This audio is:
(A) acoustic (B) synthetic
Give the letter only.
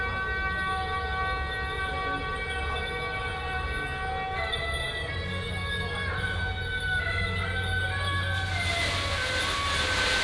A